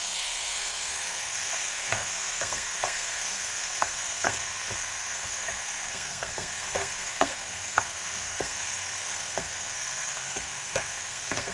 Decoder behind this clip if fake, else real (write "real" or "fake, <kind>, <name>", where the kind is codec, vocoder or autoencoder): fake, codec, SNAC